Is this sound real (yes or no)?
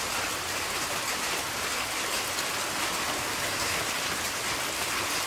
yes